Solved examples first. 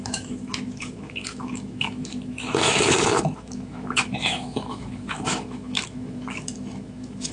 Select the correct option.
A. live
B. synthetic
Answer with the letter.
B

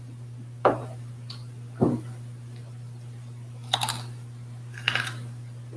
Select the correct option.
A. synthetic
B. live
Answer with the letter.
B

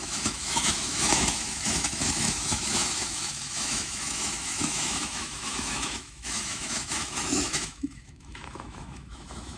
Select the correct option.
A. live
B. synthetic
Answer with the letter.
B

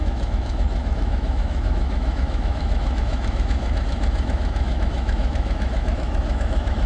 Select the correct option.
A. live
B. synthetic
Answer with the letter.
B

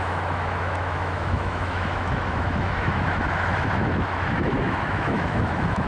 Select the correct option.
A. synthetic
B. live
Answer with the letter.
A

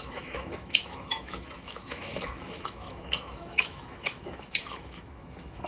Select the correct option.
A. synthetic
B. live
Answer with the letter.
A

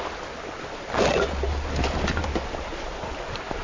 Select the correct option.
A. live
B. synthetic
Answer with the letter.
A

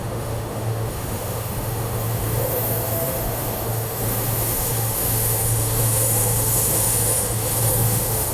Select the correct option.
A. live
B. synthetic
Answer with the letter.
B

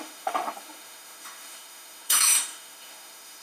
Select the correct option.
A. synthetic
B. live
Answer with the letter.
A